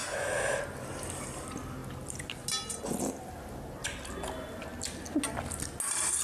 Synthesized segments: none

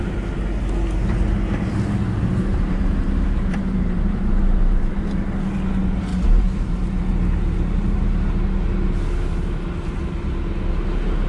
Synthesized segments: 2.5-5.1 (vocoder, BigVGAN v2); 6.1-7.1

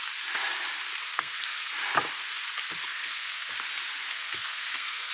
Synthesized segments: 1.0-1.7 (codec, SNAC); 2.8-3.5; 4.1-5.1